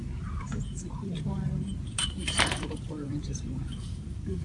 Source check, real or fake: fake